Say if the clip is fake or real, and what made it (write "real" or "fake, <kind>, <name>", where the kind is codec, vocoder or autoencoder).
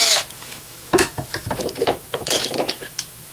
fake, autoencoder, DAC-VAE